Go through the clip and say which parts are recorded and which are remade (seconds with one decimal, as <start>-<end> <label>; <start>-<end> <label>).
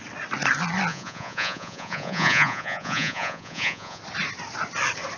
0.0-0.9 recorded; 0.9-4.0 remade; 4.0-5.2 recorded